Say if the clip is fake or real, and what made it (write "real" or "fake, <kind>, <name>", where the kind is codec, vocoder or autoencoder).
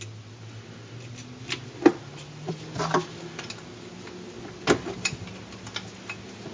real